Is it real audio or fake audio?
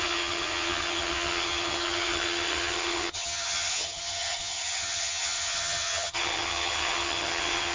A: fake